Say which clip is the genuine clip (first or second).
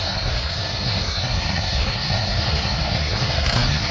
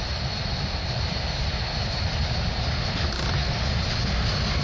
second